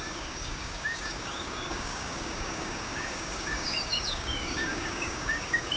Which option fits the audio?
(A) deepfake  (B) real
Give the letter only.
A